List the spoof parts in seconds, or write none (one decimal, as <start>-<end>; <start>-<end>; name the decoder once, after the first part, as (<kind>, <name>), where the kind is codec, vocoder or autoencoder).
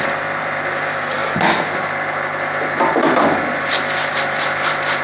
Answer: 0.0-1.2 (vocoder, BigVGAN v2); 4.1-5.0